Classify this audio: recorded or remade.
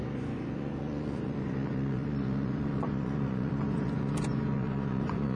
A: remade